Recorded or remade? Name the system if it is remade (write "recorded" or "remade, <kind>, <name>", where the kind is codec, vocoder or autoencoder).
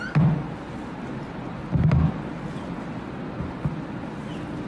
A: recorded